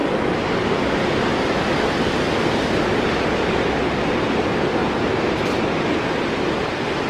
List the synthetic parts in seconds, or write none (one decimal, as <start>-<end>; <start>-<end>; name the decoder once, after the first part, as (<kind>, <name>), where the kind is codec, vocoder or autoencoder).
none